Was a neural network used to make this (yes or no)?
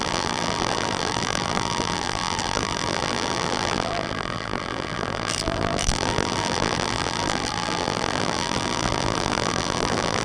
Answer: yes